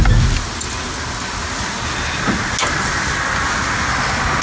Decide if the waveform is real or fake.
real